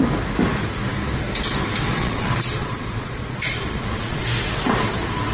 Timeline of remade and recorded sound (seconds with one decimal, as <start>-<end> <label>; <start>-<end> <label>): 0.0-1.9 recorded; 1.9-4.2 remade; 4.2-5.3 recorded